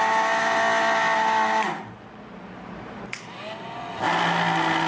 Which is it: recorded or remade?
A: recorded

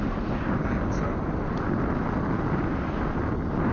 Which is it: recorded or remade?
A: recorded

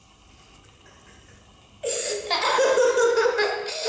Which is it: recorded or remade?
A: recorded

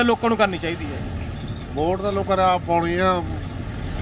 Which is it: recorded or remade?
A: recorded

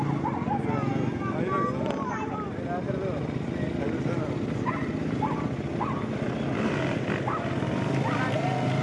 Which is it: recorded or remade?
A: recorded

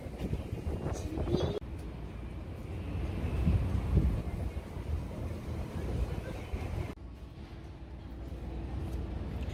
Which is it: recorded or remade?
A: recorded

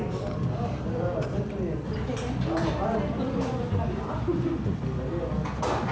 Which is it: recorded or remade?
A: recorded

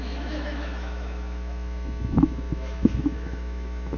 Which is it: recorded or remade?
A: remade